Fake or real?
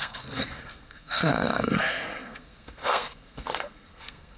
fake